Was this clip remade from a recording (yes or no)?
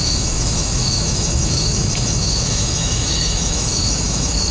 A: yes